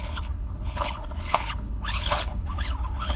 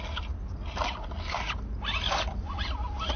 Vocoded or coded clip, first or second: first